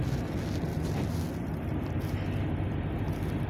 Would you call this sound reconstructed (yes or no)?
no